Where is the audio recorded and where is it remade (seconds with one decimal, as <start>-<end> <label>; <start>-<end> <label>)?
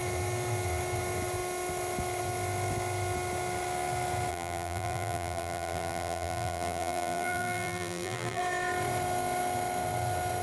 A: 0.0-4.3 recorded; 4.3-8.4 remade; 8.4-10.4 recorded